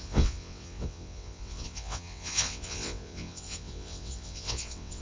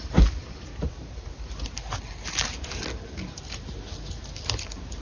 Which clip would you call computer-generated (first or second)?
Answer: first